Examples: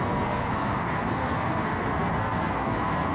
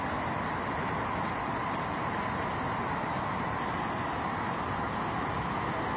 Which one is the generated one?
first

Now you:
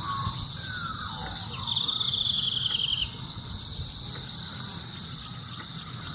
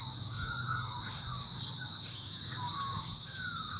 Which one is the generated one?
second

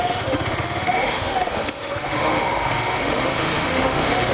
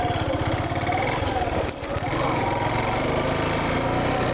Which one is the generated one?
first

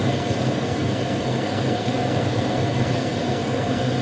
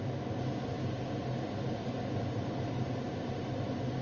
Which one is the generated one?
first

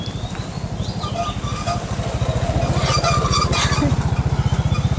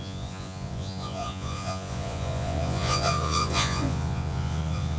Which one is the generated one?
second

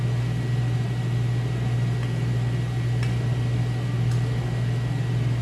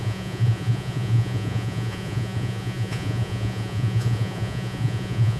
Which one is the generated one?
second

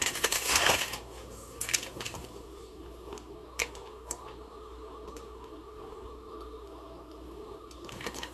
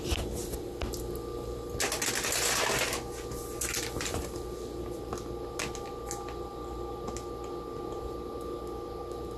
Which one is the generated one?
first